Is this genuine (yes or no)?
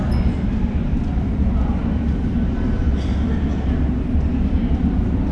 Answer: yes